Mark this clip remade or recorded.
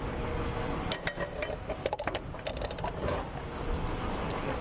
recorded